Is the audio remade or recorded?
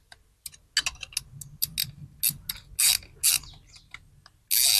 recorded